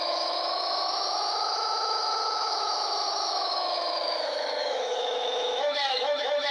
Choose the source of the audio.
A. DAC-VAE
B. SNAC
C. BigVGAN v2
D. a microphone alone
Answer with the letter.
A